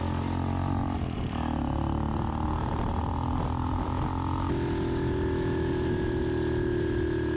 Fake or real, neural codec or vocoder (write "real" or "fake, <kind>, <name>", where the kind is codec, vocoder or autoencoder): real